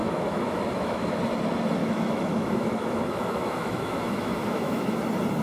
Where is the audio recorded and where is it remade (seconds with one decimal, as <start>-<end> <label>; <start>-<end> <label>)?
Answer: 0.0-1.2 remade; 1.2-1.8 recorded; 1.8-5.0 remade; 5.0-5.4 recorded